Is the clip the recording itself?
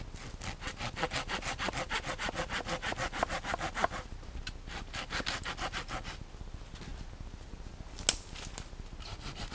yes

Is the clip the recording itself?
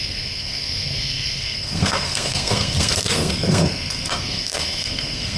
no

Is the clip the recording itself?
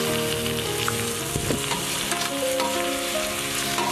yes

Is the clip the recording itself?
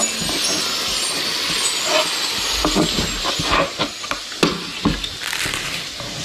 yes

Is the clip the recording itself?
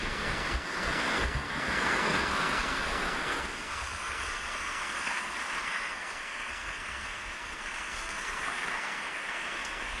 no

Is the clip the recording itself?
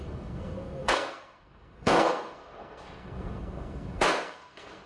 no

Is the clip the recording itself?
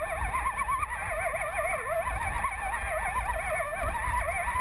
yes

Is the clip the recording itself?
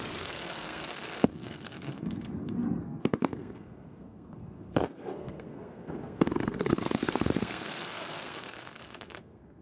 no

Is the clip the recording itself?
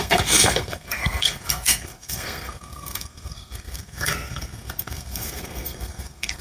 no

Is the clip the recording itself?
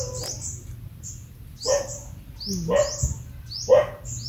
yes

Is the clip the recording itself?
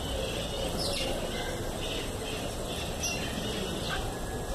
yes